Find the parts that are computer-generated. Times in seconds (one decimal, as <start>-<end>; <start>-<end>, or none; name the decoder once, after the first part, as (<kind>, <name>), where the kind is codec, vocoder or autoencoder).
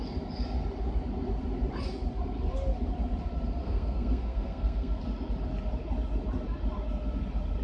3.6-5.0 (codec, SNAC)